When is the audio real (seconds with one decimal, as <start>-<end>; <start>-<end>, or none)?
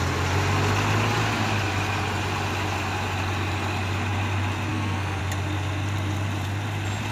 0.0-4.7; 5.2-7.1